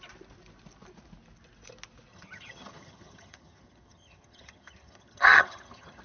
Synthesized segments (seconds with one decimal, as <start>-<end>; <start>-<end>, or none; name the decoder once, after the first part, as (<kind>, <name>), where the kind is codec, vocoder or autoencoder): 2.1-6.0 (vocoder, HiFi-GAN)